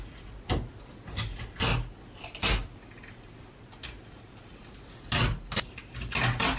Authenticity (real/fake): real